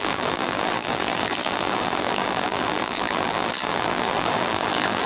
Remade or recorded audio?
remade